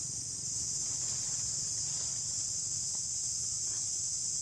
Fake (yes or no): no